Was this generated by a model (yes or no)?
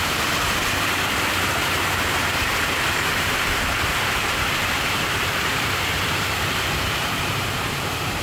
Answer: yes